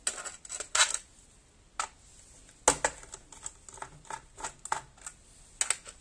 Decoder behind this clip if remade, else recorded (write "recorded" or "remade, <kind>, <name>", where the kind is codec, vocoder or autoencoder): recorded